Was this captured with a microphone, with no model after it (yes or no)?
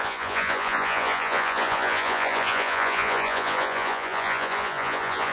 no